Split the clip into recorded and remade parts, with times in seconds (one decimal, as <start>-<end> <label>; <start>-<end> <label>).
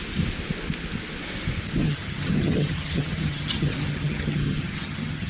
0.0-1.8 recorded; 1.8-5.3 remade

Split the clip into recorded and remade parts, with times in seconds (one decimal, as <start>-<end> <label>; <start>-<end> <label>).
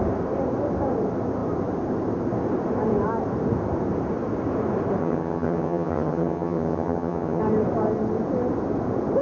0.0-5.0 recorded; 5.0-7.4 remade; 7.4-9.2 recorded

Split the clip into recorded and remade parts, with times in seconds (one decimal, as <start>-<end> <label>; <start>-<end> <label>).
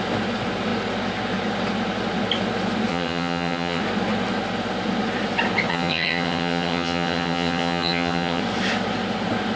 0.0-2.9 recorded; 2.9-3.8 remade; 3.8-5.7 recorded; 5.7-8.4 remade; 8.4-9.6 recorded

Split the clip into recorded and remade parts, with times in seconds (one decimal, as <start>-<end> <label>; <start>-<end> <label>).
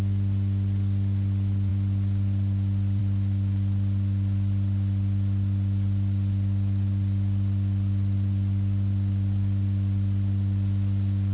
0.0-11.3 recorded